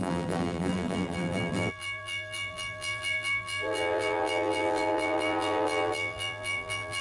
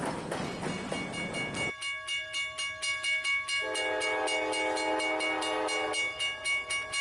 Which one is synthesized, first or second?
first